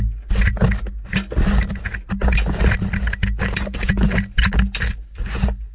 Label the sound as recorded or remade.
recorded